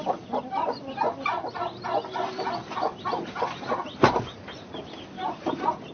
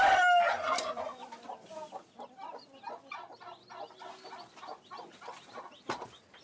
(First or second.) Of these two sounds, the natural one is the second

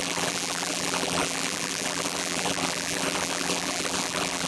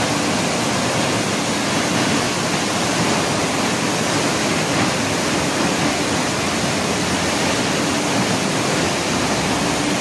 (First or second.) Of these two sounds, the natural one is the second